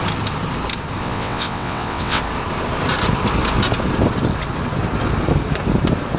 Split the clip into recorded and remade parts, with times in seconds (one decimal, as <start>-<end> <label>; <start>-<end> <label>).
0.0-1.0 recorded; 1.0-2.2 remade; 2.2-6.2 recorded